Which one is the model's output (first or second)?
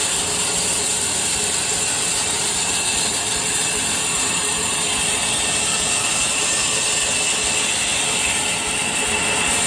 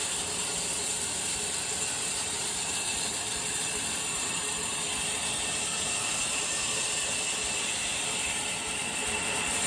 second